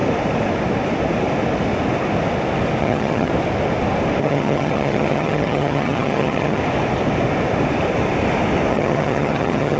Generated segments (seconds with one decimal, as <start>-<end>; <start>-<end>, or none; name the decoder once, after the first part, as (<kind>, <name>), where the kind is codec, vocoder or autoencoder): 2.8-3.3 (vocoder, HiFi-GAN); 4.2-6.6; 8.7-9.8